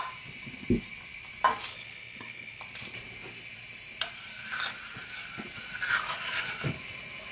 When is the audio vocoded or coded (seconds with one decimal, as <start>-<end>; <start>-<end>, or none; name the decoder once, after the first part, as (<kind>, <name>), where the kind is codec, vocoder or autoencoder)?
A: 1.7-2.6 (codec, HILCodec)